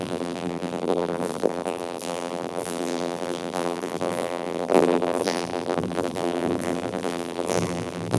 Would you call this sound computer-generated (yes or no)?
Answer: yes